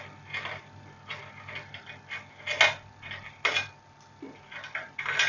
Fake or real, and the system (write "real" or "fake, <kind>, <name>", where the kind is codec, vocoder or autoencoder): real